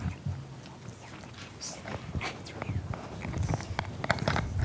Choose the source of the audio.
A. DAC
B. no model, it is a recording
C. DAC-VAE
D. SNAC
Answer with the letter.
B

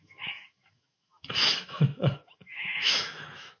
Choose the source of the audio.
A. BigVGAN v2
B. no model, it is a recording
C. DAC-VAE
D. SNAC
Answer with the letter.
C